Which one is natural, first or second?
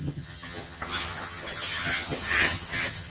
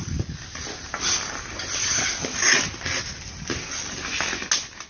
second